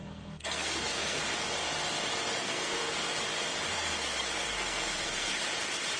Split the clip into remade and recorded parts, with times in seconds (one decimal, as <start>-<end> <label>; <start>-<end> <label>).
0.0-1.2 remade; 1.2-2.4 recorded; 2.4-3.1 remade; 3.1-3.7 recorded; 3.7-5.4 remade; 5.4-6.0 recorded